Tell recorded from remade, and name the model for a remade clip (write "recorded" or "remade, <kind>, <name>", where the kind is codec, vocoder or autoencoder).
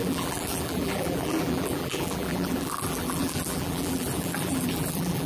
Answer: remade, vocoder, BigVGAN v2